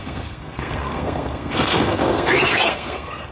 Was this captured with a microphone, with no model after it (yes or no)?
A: no